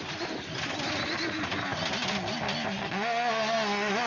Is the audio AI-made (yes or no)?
no